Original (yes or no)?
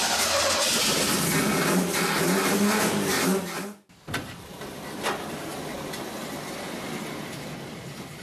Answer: yes